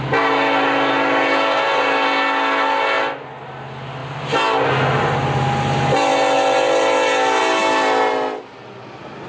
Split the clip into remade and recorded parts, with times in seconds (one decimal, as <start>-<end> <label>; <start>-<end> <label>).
0.0-9.3 recorded